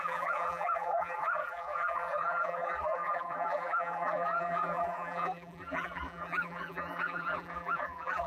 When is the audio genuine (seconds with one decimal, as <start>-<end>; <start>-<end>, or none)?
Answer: none